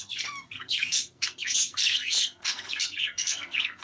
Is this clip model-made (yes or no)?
yes